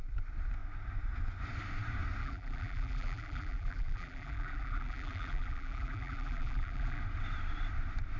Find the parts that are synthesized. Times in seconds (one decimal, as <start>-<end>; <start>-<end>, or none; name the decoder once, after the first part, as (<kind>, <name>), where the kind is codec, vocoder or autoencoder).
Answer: 2.2-7.0 (vocoder, BigVGAN v2)